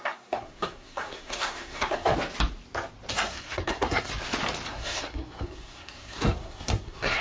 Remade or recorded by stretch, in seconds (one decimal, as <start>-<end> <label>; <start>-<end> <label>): 0.0-2.1 remade; 2.1-3.1 recorded; 3.1-4.1 remade; 4.1-4.7 recorded; 4.7-7.2 remade